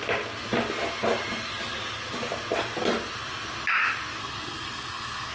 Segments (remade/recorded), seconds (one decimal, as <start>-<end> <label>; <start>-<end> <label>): 0.0-4.2 recorded; 4.2-5.3 remade